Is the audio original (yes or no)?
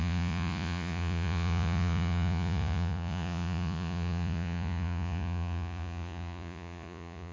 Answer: no